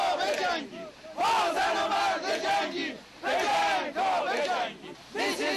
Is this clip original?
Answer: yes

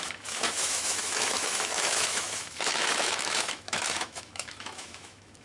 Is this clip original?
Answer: no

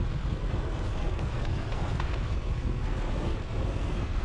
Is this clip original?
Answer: no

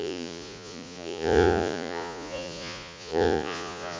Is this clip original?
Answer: no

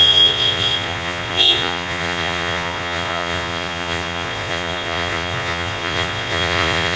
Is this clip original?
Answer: no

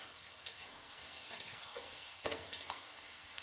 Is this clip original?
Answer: no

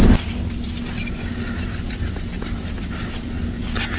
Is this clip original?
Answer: yes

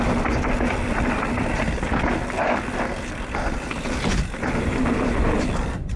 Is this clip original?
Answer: yes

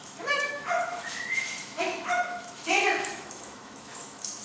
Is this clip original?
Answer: no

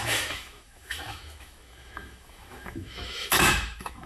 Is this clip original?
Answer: no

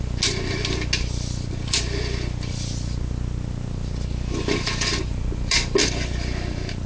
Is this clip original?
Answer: yes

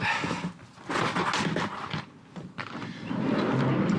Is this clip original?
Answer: yes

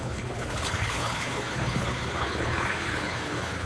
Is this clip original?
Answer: no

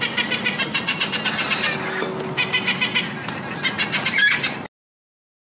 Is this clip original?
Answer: yes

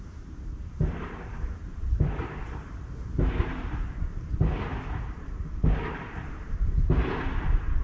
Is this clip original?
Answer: no